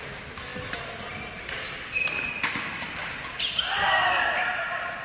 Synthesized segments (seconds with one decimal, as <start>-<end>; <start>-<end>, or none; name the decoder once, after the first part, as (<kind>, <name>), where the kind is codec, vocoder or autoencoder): none

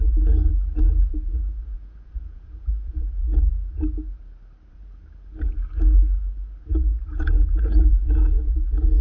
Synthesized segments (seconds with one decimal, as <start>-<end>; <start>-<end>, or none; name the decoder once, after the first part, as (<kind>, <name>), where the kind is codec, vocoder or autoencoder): 0.0-0.5 (vocoder, Vocos); 1.1-3.5; 6.6-9.0

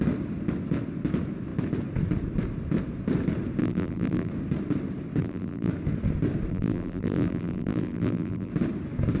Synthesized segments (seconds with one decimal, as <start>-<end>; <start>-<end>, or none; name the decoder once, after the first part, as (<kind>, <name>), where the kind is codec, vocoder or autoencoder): 3.6-4.3 (vocoder, BigVGAN v2); 5.2-5.7; 6.5-8.5

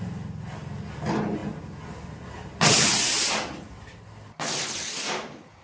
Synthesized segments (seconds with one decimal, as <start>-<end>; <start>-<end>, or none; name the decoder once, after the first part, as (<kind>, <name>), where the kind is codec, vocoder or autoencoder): none

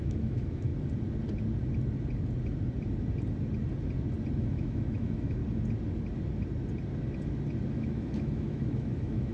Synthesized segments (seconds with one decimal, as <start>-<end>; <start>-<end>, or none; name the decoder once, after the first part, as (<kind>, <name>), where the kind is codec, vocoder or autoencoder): 0.0-0.7 (autoencoder, DAC-VAE); 4.4-5.4; 7.7-9.3

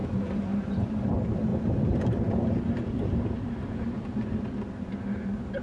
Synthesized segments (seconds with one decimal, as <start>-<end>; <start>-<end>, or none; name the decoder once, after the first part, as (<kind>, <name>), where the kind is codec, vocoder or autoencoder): 0.0-1.1 (vocoder, BigVGAN v2); 1.5-4.9

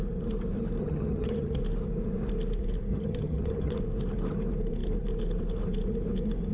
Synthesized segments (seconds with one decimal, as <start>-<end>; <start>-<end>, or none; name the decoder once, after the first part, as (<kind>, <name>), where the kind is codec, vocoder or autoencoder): 0.8-1.6 (vocoder, HiFi-GAN); 2.9-3.8